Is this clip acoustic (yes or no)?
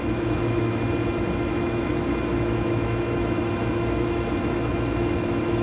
no